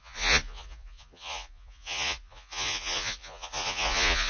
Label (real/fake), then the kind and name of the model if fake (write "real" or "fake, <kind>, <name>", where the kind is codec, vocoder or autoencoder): fake, vocoder, Vocos